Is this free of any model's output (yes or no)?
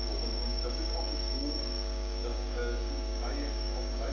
no